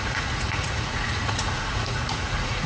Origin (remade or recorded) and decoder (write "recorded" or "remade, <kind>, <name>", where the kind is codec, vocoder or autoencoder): remade, vocoder, Vocos